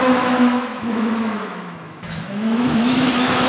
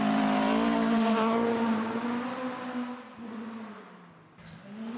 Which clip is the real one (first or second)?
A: second